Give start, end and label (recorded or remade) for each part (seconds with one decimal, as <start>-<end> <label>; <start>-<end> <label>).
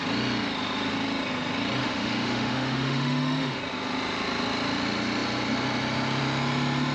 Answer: 0.0-1.8 recorded; 1.8-3.6 remade; 3.6-6.9 recorded